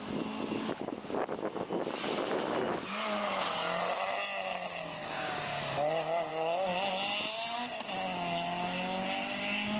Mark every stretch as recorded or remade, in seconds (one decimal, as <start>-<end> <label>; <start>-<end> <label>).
0.0-5.0 recorded; 5.0-5.6 remade; 5.6-6.3 recorded; 6.3-6.9 remade; 6.9-9.8 recorded